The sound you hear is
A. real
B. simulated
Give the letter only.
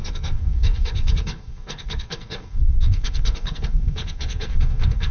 B